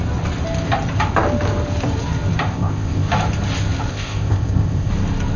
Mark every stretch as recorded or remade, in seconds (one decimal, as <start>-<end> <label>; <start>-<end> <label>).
0.0-2.5 recorded; 2.5-3.1 remade; 3.1-3.9 recorded; 3.9-4.9 remade; 4.9-5.4 recorded

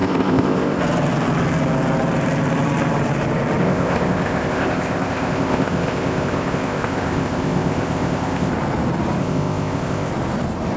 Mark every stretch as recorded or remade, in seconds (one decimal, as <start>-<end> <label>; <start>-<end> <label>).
0.0-0.8 remade; 0.8-3.6 recorded; 3.6-8.5 remade; 8.5-9.2 recorded; 9.2-10.1 remade; 10.1-10.8 recorded

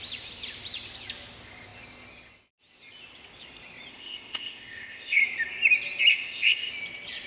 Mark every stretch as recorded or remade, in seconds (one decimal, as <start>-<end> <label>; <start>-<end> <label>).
0.0-3.9 recorded; 3.9-5.2 remade; 5.2-6.1 recorded; 6.1-6.7 remade; 6.7-7.3 recorded

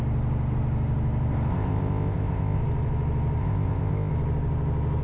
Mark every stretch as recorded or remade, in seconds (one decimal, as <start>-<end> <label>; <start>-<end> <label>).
0.0-1.5 recorded; 1.5-2.6 remade; 2.6-3.4 recorded; 3.4-4.1 remade; 4.1-5.0 recorded

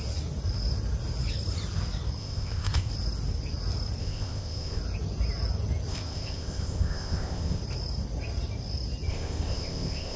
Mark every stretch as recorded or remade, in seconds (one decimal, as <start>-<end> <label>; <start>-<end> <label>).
0.0-2.2 recorded; 2.2-2.9 remade; 2.9-4.0 recorded; 4.0-4.8 remade; 4.8-5.9 recorded; 5.9-7.6 remade; 7.6-9.1 recorded; 9.1-10.2 remade

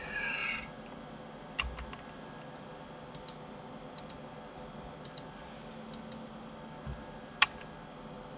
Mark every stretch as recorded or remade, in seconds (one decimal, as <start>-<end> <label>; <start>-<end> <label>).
0.0-8.4 recorded

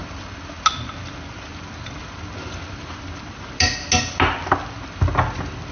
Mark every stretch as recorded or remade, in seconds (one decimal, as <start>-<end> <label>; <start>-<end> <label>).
0.0-5.7 recorded

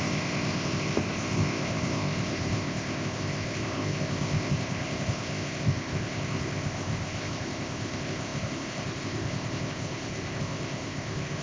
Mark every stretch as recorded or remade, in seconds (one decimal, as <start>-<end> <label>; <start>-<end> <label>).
0.0-11.4 remade